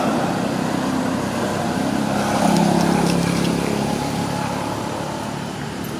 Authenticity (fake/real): fake